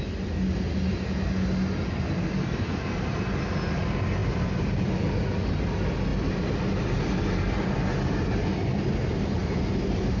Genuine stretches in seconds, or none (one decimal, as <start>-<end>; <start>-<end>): 0.0-6.1; 6.8-10.2